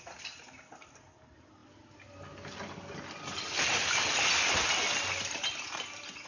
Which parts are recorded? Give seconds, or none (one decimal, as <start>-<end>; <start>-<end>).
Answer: 0.0-6.3